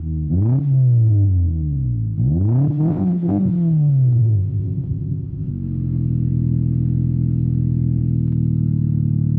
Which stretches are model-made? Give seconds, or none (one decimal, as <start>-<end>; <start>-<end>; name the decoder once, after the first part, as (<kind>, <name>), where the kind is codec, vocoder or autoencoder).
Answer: 2.9-3.4 (codec, ZipCodec); 4.2-5.5